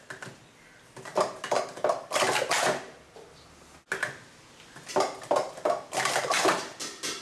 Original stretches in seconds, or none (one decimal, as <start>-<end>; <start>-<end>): 0.0-1.1; 1.6-7.2